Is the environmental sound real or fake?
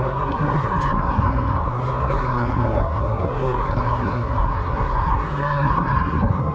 fake